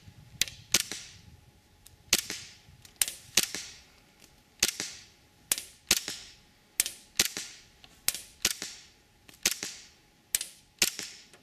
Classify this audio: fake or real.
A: real